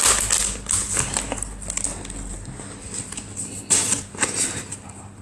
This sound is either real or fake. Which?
real